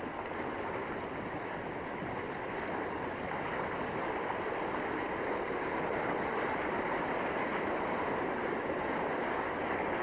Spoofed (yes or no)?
no